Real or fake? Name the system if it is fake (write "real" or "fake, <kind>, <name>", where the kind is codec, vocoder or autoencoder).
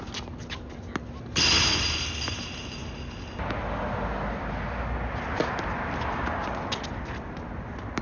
real